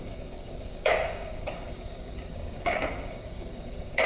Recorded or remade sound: remade